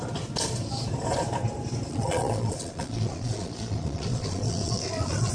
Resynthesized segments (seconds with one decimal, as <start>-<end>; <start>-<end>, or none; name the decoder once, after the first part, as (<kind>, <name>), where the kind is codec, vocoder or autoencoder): 1.9-5.3 (vocoder, Vocos)